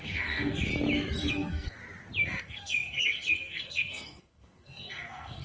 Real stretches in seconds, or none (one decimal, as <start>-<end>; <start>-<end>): 0.7-1.3; 1.8-2.4